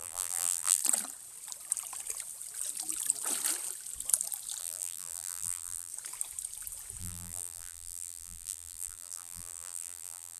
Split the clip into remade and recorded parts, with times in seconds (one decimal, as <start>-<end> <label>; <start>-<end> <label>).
0.0-0.8 remade; 0.8-4.6 recorded; 4.6-5.9 remade; 5.9-7.0 recorded; 7.0-10.4 remade